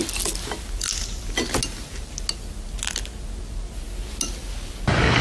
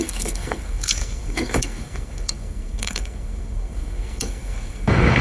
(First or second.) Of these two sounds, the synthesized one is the second